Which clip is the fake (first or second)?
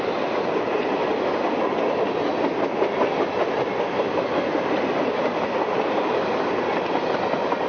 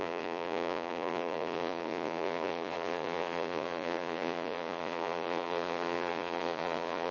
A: second